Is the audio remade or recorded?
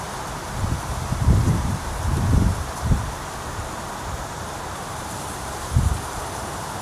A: remade